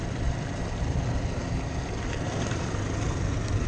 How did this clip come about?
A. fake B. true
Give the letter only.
A